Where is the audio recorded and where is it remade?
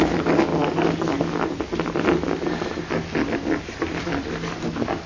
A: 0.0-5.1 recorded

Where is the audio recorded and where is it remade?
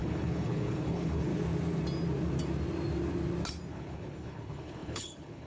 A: 0.0-1.3 remade; 1.3-3.7 recorded; 3.7-5.5 remade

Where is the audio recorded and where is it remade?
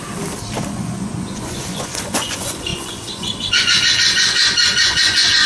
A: 0.0-0.7 recorded; 0.7-5.5 remade